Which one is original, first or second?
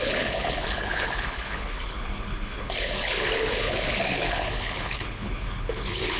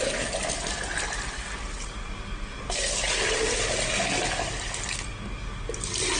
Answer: second